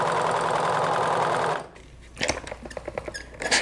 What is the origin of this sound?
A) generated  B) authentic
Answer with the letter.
B